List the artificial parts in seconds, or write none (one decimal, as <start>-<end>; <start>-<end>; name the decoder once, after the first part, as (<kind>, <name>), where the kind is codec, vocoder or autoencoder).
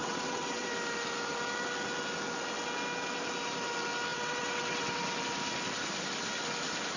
0.0-0.7 (vocoder, WaveNeXt); 4.1-5.2